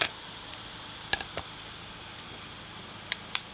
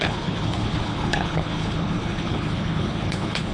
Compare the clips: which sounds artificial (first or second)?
second